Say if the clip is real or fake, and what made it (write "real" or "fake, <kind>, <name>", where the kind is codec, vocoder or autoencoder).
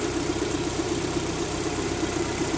fake, vocoder, BigVGAN v2